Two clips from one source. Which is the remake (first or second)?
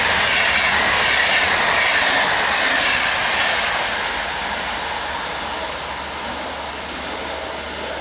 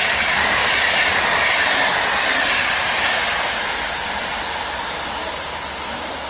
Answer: second